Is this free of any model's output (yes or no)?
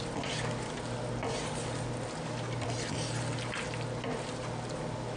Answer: yes